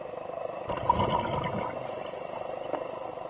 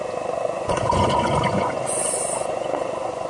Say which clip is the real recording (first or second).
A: first